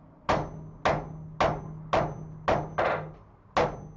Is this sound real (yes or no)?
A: yes